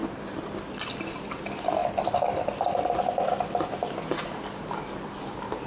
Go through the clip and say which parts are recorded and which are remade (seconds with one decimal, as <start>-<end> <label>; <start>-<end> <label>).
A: 0.0-5.7 recorded